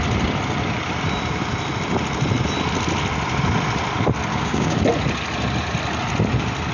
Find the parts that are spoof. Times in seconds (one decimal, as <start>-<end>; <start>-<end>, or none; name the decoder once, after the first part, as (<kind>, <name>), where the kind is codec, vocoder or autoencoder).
4.3-4.8 (codec, DAC)